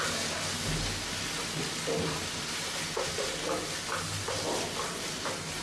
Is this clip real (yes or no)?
yes